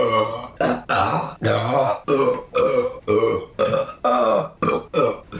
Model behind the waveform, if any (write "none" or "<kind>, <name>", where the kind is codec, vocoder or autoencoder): none